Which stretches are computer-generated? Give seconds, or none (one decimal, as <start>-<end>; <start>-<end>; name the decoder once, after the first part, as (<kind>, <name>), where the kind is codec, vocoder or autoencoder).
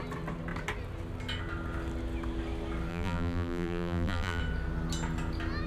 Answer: 2.9-4.4 (vocoder, BigVGAN v2)